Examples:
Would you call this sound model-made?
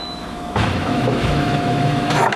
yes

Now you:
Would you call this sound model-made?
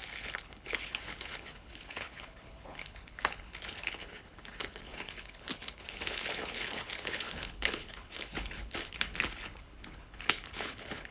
yes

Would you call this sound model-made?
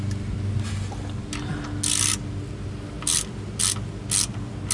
no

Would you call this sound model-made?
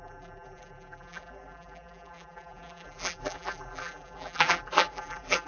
yes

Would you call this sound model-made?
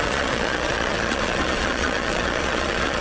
yes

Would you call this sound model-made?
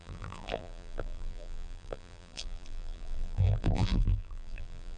yes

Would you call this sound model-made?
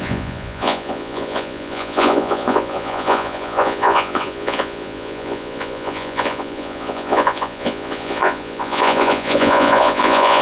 yes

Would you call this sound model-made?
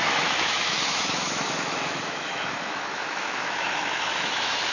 yes